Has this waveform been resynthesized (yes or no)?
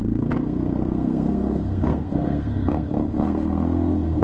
yes